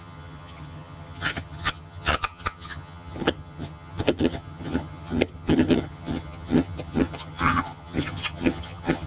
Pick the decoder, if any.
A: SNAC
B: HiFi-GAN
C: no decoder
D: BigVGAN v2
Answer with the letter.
B